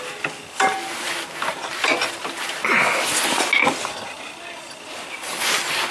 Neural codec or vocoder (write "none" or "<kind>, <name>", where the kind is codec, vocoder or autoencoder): none